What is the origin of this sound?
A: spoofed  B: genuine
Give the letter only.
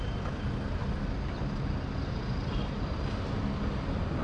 B